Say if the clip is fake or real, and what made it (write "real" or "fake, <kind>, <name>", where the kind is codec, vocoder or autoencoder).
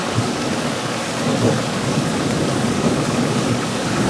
fake, codec, DAC